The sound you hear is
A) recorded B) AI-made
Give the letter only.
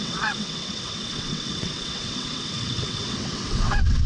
B